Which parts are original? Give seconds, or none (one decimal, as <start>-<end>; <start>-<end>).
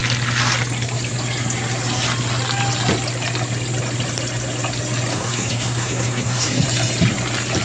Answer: 0.0-5.1; 6.6-7.6